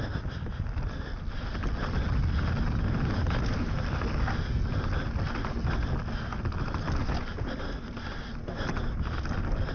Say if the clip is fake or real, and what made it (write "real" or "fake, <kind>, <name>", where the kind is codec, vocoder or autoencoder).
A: real